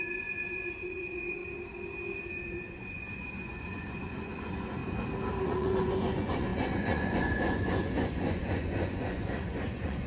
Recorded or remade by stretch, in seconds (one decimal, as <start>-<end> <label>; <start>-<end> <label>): 0.0-1.4 remade; 1.4-2.3 recorded; 2.3-4.8 remade; 4.8-5.4 recorded; 5.4-10.1 remade